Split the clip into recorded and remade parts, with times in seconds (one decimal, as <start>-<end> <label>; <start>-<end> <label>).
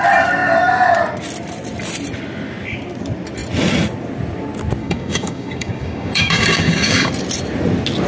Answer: 0.0-4.8 recorded; 4.8-7.1 remade; 7.1-8.1 recorded